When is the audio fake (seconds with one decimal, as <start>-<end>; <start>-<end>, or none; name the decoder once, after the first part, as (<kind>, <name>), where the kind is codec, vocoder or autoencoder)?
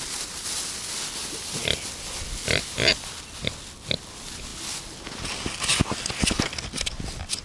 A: none